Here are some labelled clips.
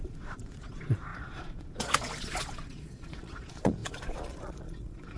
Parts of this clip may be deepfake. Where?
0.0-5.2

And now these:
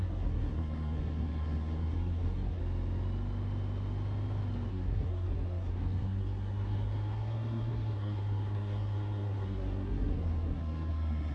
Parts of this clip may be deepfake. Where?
0.0-2.6; 4.7-11.3

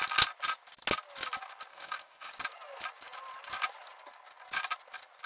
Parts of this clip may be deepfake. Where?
1.7-2.3

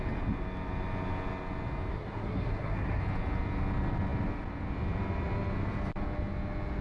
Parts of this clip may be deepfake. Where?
1.9-3.0